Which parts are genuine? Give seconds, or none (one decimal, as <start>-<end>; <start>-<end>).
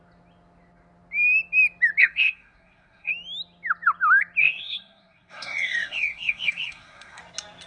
0.0-2.0; 3.1-4.4; 7.2-7.7